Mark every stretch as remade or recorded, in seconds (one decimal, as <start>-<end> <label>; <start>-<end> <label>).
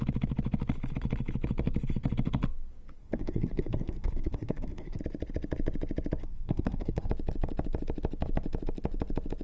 0.0-3.0 recorded; 3.0-5.0 remade; 5.0-6.2 recorded; 6.2-7.1 remade; 7.1-9.4 recorded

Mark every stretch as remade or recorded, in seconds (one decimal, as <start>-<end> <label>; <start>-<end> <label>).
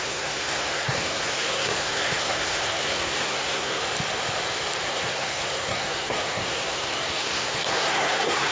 0.0-3.8 remade; 3.8-4.9 recorded; 4.9-8.5 remade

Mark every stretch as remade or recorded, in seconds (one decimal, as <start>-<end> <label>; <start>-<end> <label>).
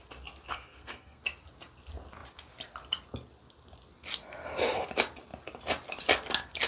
0.0-0.5 recorded; 0.5-1.2 remade; 1.2-6.7 recorded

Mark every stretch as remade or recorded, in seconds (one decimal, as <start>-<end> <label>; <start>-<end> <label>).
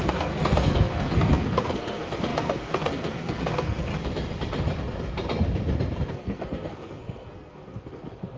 0.0-3.9 remade; 3.9-6.1 recorded; 6.1-8.4 remade